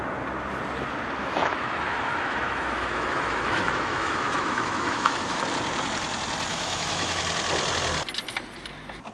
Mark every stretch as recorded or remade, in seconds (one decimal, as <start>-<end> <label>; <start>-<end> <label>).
0.0-1.2 recorded; 1.2-5.4 remade; 5.4-6.5 recorded; 6.5-7.2 remade; 7.2-9.1 recorded